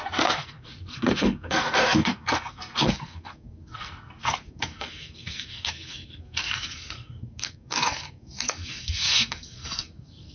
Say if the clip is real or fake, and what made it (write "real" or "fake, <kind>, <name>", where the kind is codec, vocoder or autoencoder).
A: fake, codec, SNAC